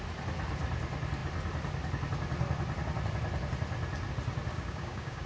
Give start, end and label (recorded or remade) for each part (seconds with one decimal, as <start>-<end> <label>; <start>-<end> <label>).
0.0-4.5 recorded; 4.5-5.3 remade